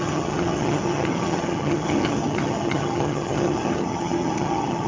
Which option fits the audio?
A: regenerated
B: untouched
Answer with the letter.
A